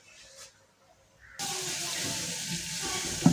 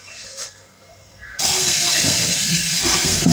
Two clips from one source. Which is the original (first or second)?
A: first